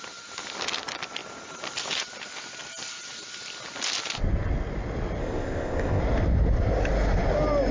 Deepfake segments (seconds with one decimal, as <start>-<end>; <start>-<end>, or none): 5.2-6.0